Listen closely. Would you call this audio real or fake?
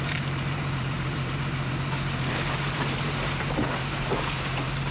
fake